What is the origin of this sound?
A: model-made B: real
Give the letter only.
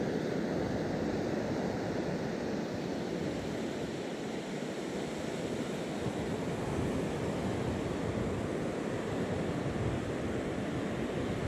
B